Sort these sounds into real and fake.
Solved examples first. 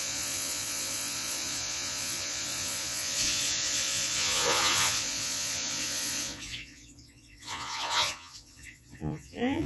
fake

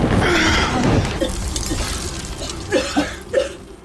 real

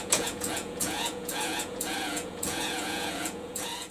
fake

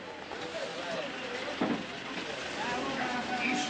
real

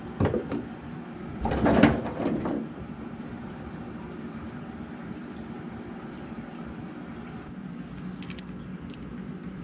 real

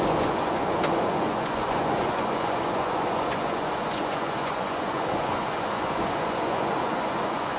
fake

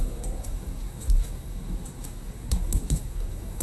fake